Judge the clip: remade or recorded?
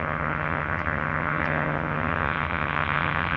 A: remade